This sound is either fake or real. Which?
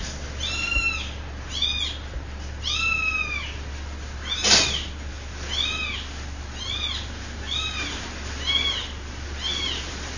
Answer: real